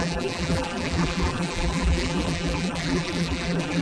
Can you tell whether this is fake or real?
fake